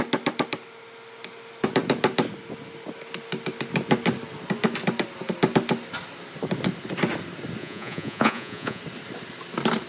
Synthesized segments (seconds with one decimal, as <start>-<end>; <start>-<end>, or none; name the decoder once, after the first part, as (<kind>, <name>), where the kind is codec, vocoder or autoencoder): 7.6-8.8 (vocoder, Vocos)